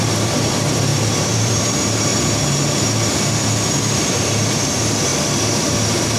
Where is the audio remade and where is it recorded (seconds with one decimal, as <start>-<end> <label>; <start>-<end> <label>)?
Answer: 0.0-2.1 remade; 2.1-3.8 recorded; 3.8-5.1 remade; 5.1-5.6 recorded; 5.6-6.2 remade